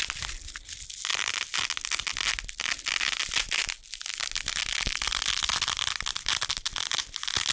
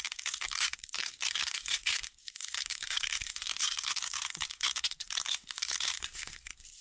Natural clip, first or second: first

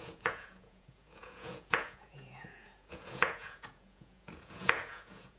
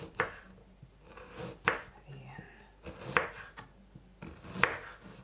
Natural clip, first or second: second